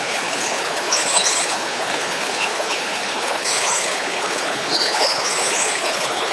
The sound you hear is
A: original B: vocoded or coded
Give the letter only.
B